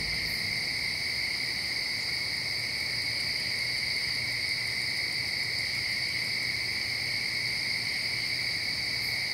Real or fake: real